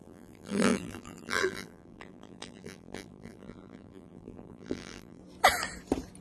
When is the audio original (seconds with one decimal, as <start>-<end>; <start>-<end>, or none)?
5.2-6.2